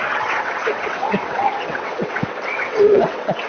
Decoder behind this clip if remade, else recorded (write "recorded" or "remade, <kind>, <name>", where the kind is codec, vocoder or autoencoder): remade, vocoder, WaveNeXt